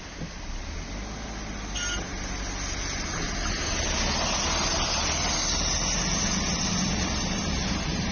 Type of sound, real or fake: real